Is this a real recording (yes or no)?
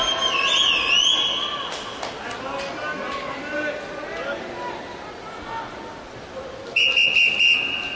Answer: yes